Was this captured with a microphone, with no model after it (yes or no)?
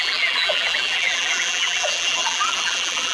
no